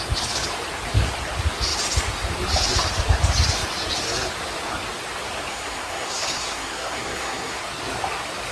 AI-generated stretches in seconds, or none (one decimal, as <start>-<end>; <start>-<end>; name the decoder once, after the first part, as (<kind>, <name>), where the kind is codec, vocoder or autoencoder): 5.5-7.6 (codec, SNAC)